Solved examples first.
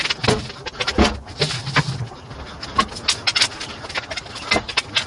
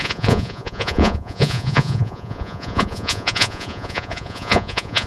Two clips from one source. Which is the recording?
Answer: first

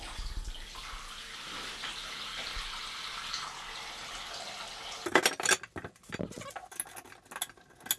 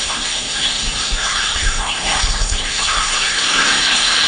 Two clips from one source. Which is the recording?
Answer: first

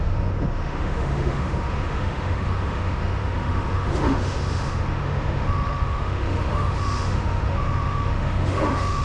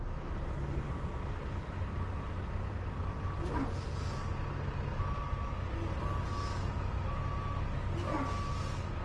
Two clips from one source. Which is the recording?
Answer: second